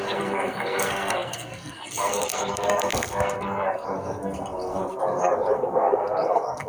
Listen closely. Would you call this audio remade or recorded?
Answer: remade